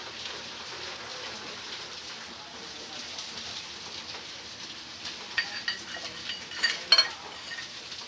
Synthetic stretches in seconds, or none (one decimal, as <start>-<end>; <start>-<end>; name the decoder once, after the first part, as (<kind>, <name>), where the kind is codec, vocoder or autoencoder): none